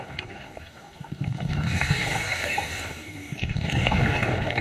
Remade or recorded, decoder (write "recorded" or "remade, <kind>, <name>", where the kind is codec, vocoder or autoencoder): remade, codec, DAC